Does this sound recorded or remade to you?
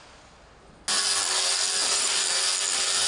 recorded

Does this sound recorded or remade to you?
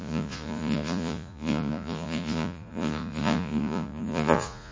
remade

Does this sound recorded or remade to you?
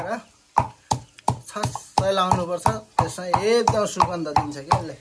recorded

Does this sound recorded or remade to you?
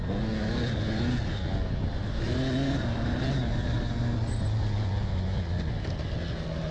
recorded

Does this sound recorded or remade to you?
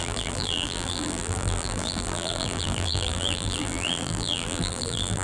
remade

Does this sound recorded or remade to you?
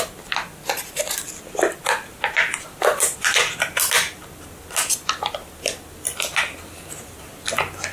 recorded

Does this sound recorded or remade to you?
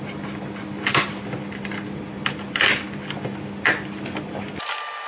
recorded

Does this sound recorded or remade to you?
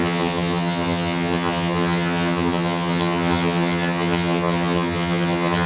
remade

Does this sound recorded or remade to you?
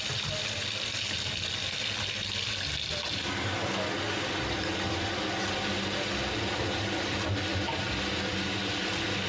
recorded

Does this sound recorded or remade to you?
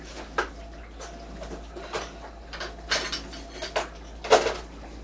recorded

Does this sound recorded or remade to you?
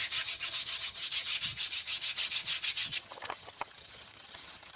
remade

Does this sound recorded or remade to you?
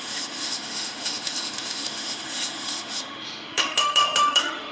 remade